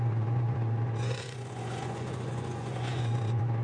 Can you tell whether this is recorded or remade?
remade